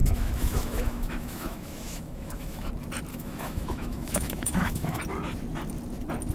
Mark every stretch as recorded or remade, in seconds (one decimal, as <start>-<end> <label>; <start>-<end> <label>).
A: 0.0-2.7 remade; 2.7-3.1 recorded; 3.1-5.0 remade; 5.0-6.3 recorded